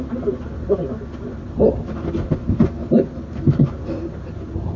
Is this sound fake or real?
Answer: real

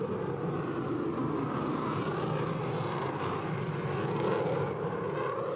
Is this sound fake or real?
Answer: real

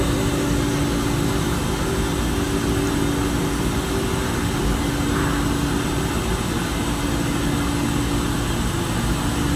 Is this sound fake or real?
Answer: real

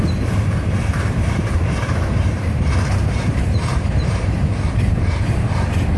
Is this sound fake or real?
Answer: fake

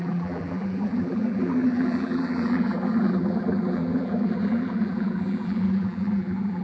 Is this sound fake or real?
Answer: fake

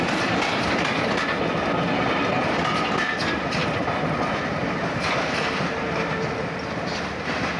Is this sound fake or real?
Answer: real